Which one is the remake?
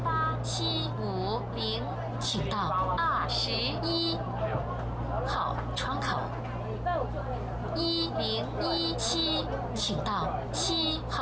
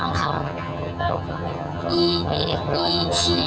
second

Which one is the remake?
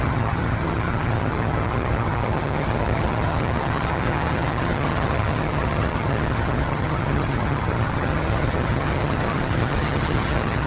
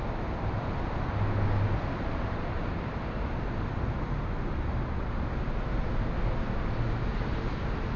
first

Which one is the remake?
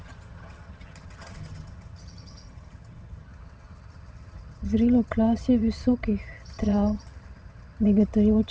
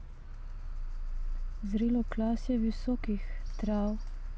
first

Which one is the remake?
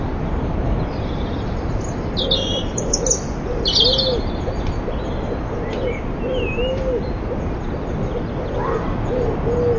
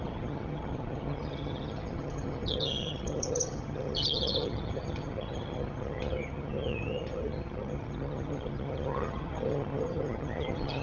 second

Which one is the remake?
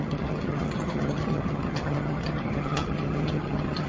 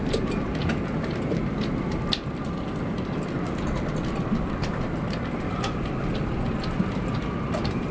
first